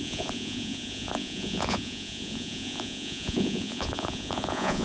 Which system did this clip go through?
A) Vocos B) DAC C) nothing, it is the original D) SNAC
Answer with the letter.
A